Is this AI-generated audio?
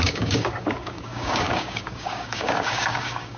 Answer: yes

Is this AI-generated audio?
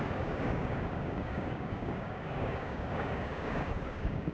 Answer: yes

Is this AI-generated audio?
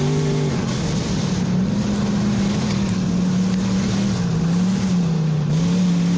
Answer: no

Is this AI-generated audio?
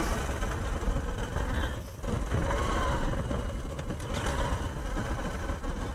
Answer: no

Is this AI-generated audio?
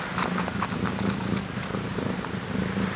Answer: no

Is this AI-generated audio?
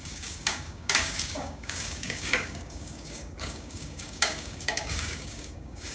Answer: yes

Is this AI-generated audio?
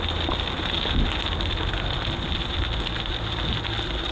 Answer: no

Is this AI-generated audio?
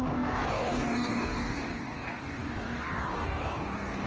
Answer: yes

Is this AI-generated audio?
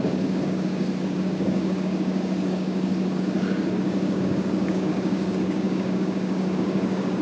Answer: yes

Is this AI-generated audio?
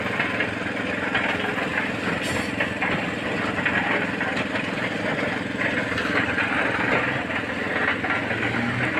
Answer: no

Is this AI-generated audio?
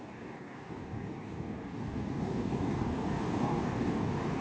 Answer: yes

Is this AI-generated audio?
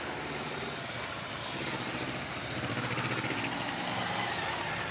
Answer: no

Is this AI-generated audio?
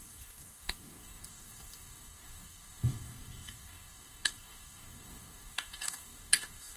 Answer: yes